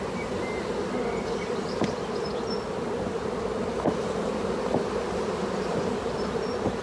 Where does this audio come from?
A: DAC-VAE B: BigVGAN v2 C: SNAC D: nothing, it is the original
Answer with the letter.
D